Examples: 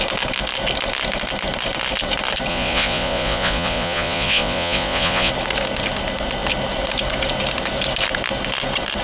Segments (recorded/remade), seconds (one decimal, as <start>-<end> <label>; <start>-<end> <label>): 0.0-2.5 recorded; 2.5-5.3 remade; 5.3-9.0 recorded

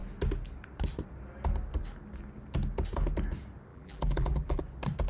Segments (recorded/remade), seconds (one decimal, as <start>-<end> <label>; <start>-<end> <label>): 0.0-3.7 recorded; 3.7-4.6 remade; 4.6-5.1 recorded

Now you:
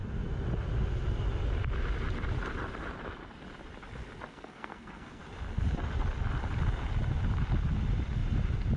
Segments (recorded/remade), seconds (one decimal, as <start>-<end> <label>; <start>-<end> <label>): 0.0-4.3 recorded; 4.3-5.2 remade; 5.2-8.8 recorded

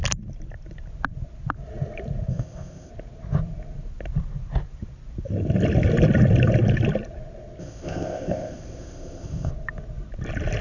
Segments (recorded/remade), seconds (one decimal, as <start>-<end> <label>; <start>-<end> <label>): 0.0-2.3 recorded; 2.3-2.9 remade; 2.9-7.6 recorded; 7.6-9.5 remade; 9.5-10.6 recorded

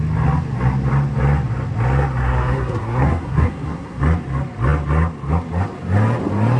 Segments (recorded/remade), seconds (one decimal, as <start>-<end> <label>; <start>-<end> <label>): 0.0-2.2 recorded; 2.2-4.0 remade; 4.0-6.6 recorded